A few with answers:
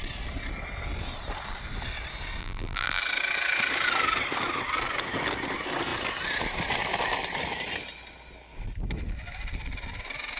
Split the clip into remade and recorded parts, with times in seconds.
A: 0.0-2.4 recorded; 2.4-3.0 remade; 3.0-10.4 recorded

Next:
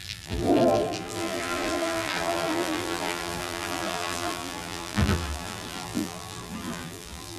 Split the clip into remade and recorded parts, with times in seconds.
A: 0.0-7.4 remade

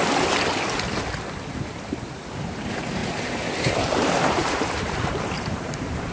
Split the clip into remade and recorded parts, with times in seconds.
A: 0.0-1.8 recorded; 1.8-3.0 remade; 3.0-3.6 recorded; 3.6-6.1 remade